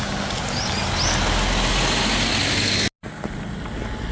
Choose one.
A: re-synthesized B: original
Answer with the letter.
B